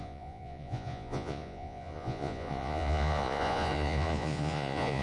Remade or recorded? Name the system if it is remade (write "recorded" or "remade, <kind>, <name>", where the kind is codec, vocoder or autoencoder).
remade, vocoder, Vocos